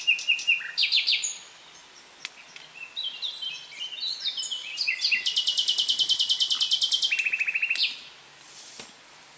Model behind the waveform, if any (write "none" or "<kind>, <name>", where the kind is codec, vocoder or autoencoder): none